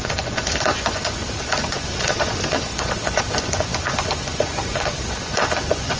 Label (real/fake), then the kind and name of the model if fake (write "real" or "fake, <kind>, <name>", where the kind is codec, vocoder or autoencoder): fake, vocoder, Vocos